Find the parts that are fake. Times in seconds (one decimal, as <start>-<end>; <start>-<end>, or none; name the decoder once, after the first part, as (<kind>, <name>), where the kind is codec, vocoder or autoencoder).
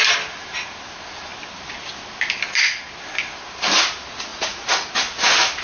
4.3-4.9 (vocoder, Vocos)